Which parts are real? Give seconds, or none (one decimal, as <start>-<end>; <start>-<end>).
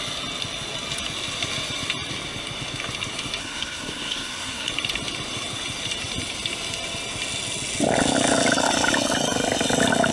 0.0-3.4; 4.7-10.1